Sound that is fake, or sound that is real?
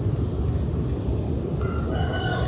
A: real